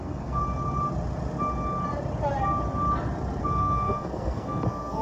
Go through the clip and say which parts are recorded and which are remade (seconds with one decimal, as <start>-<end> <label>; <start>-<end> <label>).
0.0-0.4 remade; 0.4-3.4 recorded; 3.4-5.0 remade